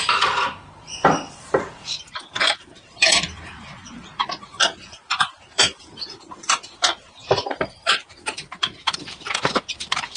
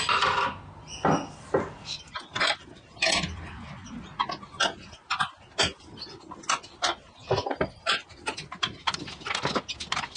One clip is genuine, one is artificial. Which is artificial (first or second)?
first